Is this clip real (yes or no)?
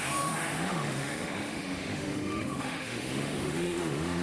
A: no